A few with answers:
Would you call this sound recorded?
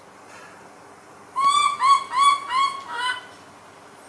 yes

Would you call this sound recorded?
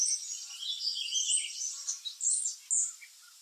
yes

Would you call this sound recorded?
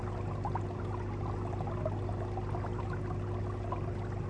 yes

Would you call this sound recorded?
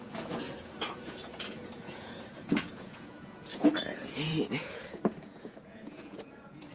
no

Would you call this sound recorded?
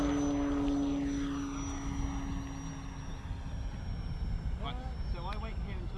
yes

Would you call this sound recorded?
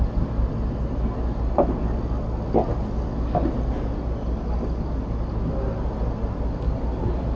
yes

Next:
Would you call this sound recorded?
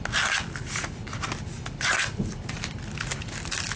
yes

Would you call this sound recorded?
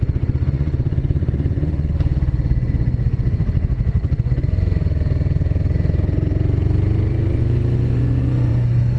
no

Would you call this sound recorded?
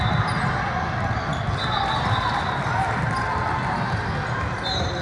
yes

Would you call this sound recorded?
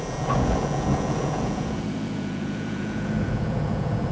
no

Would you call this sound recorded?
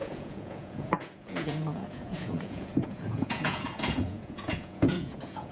no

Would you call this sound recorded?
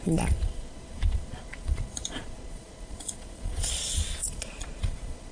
no